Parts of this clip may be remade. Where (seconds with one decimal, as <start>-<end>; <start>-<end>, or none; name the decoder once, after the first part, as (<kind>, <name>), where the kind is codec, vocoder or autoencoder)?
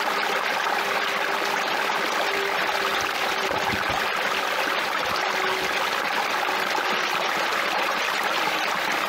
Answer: 7.5-8.6 (vocoder, BigVGAN v2)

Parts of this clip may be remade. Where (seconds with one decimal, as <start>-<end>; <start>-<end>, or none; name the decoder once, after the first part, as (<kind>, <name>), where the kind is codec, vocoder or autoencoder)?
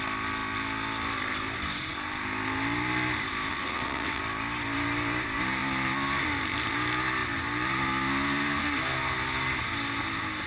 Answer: 3.5-4.2 (vocoder, WaveNeXt)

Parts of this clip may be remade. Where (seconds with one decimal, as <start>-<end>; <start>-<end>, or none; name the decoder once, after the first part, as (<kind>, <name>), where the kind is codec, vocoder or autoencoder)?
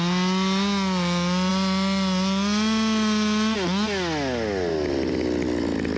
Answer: none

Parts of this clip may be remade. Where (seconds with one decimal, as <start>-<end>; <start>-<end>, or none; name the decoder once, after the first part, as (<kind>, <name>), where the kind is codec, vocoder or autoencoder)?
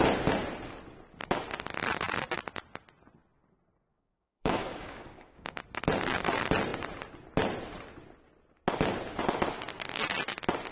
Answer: 3.9-5.6 (codec, DAC)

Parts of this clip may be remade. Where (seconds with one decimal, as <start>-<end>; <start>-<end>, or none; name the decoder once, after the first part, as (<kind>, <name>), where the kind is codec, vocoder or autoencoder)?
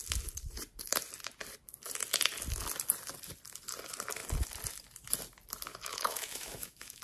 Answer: 5.7-7.0 (autoencoder, DAC-VAE)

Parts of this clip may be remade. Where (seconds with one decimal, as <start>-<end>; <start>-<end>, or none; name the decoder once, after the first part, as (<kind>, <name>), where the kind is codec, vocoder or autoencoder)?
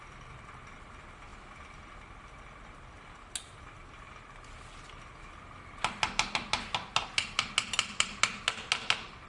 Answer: none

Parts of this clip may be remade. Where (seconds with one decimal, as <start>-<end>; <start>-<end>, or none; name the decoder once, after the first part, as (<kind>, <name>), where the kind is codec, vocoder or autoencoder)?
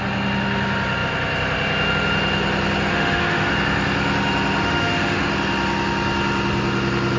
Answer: 2.9-3.5 (autoencoder, DAC-VAE); 4.6-5.3